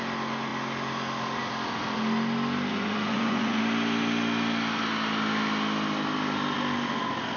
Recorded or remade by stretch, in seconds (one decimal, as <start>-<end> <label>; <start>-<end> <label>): 0.0-2.7 recorded; 2.7-3.6 remade; 3.6-7.4 recorded

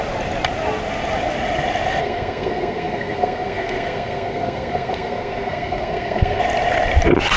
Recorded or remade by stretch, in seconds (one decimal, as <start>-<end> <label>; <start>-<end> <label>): 0.0-2.0 recorded; 2.0-6.4 remade; 6.4-7.4 recorded